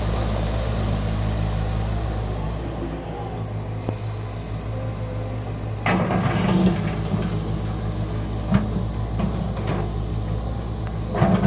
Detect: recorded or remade recorded